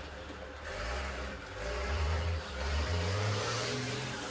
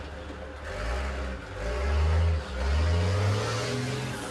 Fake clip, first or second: first